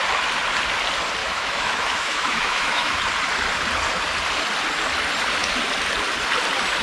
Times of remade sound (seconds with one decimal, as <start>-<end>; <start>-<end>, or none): 1.2-3.0